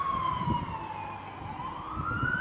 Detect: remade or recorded recorded